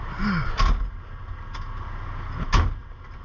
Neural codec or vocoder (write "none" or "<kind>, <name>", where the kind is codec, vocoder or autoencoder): none